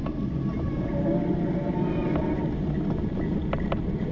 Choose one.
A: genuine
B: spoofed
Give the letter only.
A